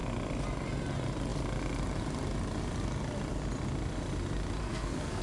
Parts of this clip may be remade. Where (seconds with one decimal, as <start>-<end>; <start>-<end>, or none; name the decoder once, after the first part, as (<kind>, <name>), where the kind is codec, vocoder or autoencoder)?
4.6-5.2 (codec, SNAC)